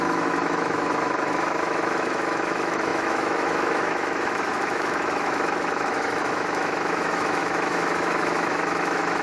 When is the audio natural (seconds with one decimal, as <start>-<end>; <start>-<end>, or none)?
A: none